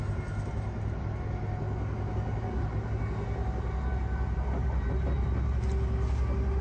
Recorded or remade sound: recorded